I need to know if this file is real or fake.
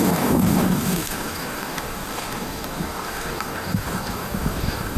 fake